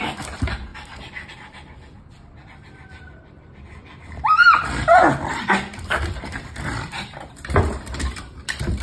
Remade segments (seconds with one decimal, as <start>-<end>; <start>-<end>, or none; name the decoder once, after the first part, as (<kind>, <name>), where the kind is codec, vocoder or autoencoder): 0.0-0.7 (vocoder, BigVGAN v2); 1.3-8.8